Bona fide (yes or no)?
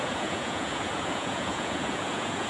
no